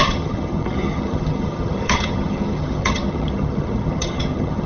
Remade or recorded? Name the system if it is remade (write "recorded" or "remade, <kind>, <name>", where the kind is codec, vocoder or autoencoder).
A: remade, vocoder, HiFi-GAN